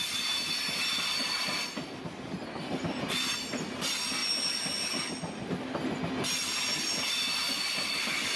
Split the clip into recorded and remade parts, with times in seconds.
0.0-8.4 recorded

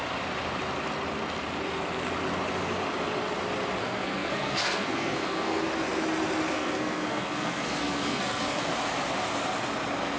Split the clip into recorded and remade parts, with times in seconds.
0.0-3.8 recorded; 3.8-5.6 remade; 5.6-6.5 recorded; 6.5-8.6 remade; 8.6-10.2 recorded

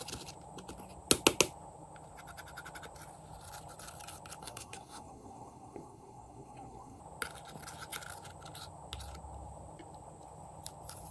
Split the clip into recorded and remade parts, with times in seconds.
0.0-4.4 recorded; 4.4-7.0 remade; 7.0-11.1 recorded

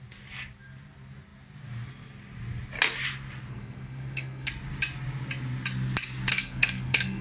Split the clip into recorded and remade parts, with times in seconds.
0.0-3.5 recorded; 3.5-4.5 remade; 4.5-6.3 recorded; 6.3-7.2 remade

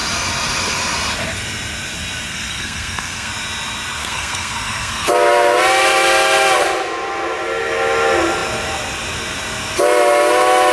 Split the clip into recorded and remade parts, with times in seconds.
0.0-2.3 recorded; 2.3-3.3 remade; 3.3-4.0 recorded; 4.0-5.1 remade; 5.1-10.7 recorded

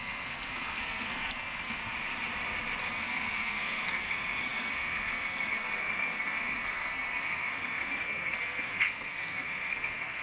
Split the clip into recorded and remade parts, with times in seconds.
0.0-1.8 remade; 1.8-2.8 recorded; 2.8-10.2 remade

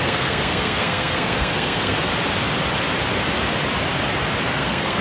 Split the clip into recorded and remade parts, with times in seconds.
0.0-2.1 remade; 2.1-4.5 recorded; 4.5-5.0 remade

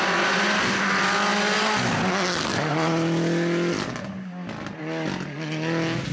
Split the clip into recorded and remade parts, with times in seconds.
0.0-6.1 recorded